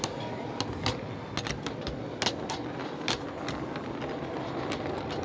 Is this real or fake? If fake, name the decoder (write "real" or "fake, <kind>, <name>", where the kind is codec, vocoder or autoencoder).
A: real